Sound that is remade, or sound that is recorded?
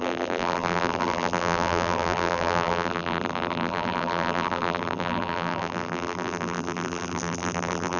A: remade